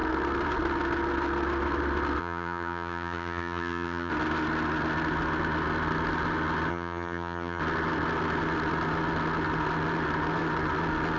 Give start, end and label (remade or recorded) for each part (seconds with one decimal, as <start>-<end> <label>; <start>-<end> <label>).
0.0-2.2 recorded; 2.2-4.1 remade; 4.1-6.7 recorded; 6.7-7.6 remade; 7.6-11.2 recorded